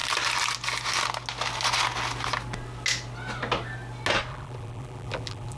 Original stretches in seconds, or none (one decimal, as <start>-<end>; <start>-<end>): 0.0-4.3

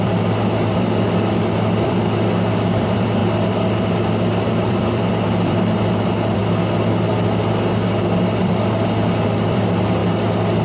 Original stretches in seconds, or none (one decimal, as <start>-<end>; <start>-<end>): 3.2-4.5; 6.4-8.4; 10.0-10.6

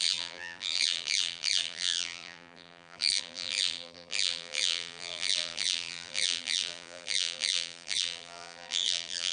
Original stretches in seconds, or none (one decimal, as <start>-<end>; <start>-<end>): none

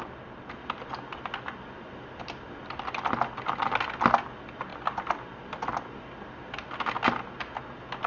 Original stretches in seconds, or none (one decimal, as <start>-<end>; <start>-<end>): 0.0-8.1

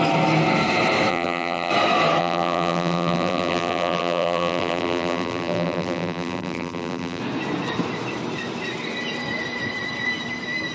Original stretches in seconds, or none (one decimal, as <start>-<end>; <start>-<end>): 0.0-1.1; 1.7-2.2; 7.2-10.7

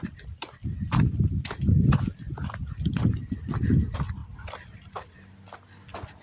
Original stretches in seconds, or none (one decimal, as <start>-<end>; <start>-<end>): 0.0-0.6; 2.3-6.2

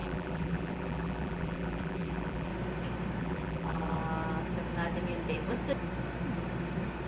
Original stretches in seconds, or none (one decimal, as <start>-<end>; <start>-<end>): 2.5-3.2; 4.0-7.1

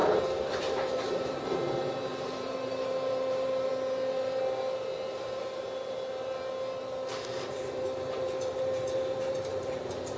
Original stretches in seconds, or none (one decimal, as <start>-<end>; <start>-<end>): 3.7-7.1